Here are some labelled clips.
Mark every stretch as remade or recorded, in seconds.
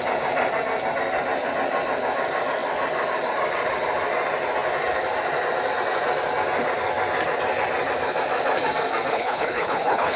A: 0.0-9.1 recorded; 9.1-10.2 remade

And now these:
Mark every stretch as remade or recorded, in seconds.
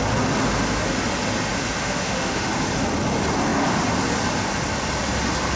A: 0.0-1.8 recorded; 1.8-2.5 remade; 2.5-5.6 recorded